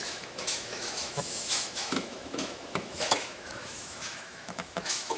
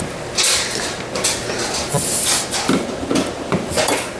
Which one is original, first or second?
second